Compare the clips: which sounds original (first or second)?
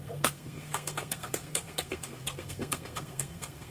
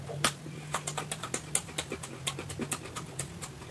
second